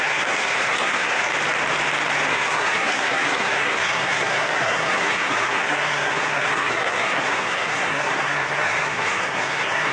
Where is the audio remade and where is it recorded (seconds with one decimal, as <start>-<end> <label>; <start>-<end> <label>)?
0.0-1.3 remade; 1.3-2.3 recorded; 2.3-9.9 remade